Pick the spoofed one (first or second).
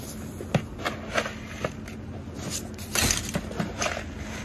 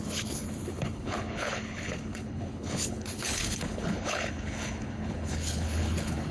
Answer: second